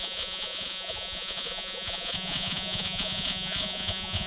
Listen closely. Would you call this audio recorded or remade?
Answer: remade